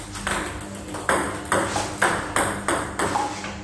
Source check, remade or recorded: recorded